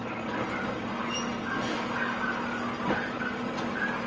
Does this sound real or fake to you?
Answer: real